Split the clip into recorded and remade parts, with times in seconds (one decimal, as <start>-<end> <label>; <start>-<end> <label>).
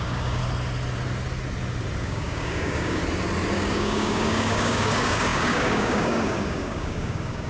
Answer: 0.0-0.4 remade; 0.4-2.0 recorded; 2.0-3.0 remade; 3.0-3.5 recorded; 3.5-7.5 remade